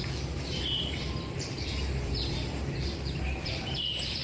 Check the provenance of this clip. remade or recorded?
remade